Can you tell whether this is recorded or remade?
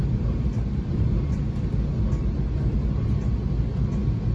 recorded